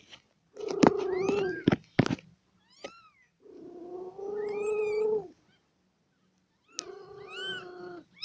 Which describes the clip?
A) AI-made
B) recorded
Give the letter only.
B